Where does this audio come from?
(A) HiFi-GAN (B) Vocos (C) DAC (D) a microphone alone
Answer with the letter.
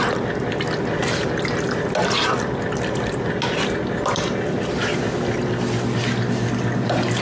D